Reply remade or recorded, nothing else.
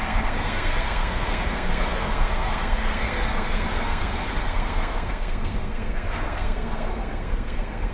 remade